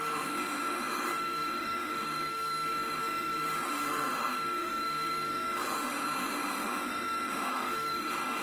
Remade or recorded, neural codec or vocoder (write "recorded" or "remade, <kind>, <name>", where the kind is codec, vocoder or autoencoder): remade, autoencoder, DAC-VAE